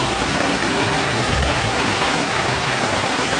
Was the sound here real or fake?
fake